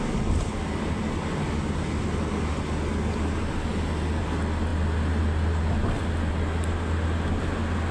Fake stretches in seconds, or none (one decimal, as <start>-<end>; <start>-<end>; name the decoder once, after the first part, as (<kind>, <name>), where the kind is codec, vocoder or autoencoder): none